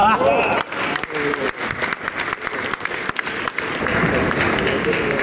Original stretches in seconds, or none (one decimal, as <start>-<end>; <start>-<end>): 0.0-5.2